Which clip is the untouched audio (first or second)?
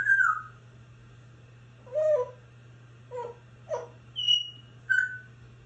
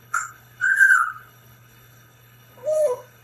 first